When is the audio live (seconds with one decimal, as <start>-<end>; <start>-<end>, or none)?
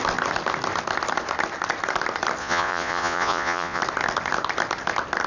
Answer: 0.0-2.4; 3.8-5.3